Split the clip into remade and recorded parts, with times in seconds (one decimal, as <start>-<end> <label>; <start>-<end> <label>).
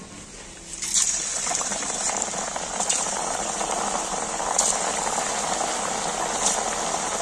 0.0-1.3 recorded; 1.3-4.4 remade; 4.4-7.2 recorded